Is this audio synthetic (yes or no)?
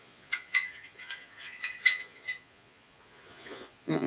yes